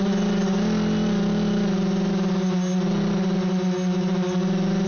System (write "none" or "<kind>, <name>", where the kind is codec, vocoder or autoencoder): none